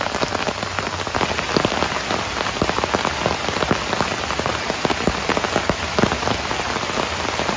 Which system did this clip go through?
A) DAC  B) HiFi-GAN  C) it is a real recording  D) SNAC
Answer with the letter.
C